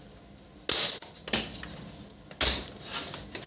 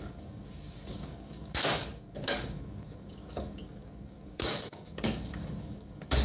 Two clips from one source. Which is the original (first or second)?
first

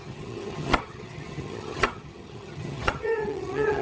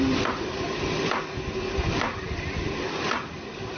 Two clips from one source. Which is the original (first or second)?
second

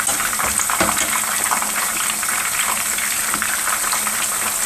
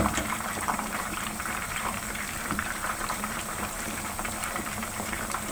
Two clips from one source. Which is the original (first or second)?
first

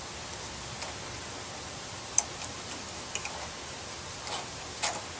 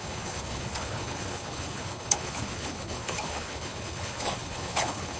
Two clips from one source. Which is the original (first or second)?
first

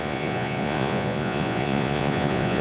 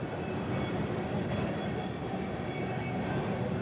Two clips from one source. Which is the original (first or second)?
second